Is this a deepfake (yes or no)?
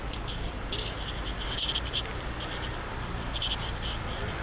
no